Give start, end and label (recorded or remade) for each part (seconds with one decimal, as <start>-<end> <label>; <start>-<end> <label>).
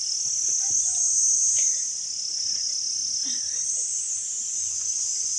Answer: 0.0-5.4 recorded